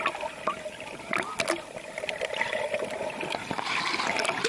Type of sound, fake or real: real